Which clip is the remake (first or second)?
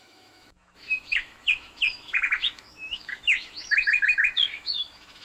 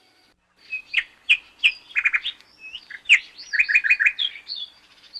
first